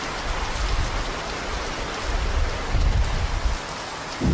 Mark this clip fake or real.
real